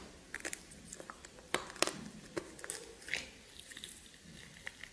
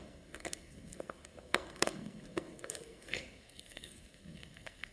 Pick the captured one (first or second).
first